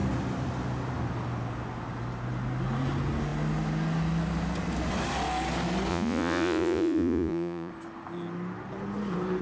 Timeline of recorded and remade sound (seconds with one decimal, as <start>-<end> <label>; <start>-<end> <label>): 0.0-5.9 recorded; 5.9-7.7 remade; 7.7-9.4 recorded